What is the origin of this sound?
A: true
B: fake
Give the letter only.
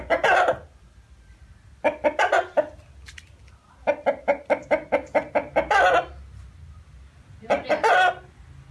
A